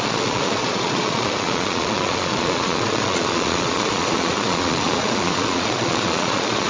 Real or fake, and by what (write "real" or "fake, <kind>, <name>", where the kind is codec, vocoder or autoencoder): fake, vocoder, Vocos